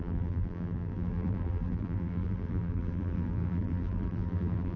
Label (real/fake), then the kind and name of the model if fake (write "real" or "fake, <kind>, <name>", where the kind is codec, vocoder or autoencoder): fake, vocoder, BigVGAN v2